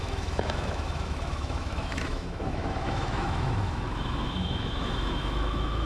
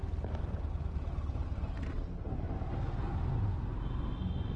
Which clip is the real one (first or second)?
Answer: second